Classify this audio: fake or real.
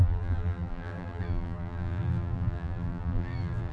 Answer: fake